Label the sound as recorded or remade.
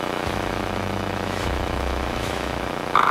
remade